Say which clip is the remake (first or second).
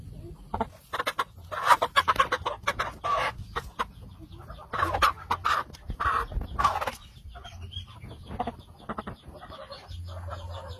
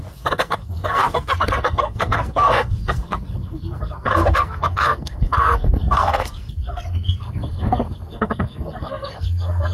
second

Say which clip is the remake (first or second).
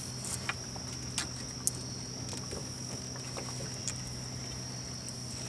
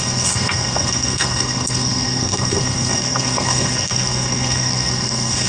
second